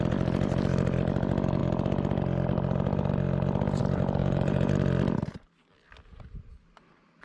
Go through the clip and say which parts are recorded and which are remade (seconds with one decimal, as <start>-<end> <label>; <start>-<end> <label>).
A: 0.0-4.2 recorded; 4.2-4.7 remade; 4.7-7.2 recorded